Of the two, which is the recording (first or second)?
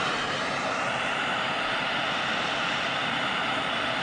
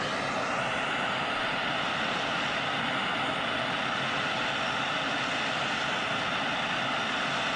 second